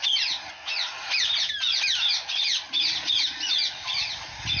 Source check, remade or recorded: recorded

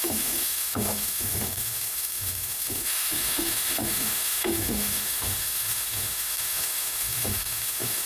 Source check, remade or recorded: remade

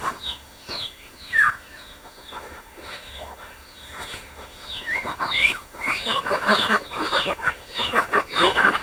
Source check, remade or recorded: remade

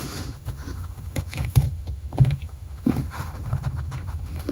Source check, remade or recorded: remade